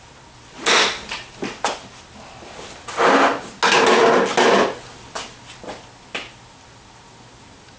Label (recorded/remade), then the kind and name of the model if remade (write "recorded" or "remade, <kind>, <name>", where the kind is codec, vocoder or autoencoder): recorded